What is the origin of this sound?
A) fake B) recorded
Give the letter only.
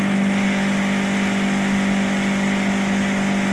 B